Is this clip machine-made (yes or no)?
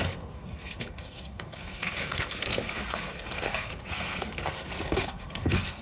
yes